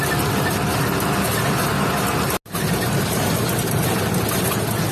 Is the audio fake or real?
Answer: real